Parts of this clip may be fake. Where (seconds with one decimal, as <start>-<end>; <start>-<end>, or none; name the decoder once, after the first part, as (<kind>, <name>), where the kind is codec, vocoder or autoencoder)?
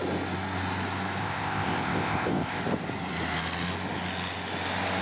1.2-2.6 (codec, ZipCodec)